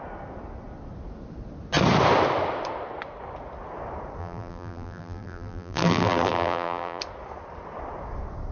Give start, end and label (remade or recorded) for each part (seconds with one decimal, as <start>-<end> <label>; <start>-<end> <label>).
0.0-4.2 recorded; 4.2-7.0 remade; 7.0-8.5 recorded